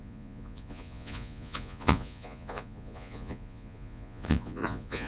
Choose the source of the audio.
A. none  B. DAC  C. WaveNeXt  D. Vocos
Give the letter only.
D